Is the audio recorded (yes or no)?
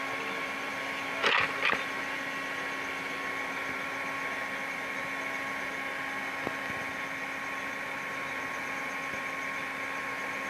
yes